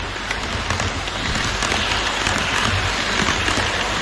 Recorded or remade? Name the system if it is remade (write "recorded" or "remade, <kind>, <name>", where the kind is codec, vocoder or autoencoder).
recorded